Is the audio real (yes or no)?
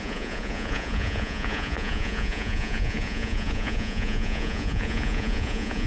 no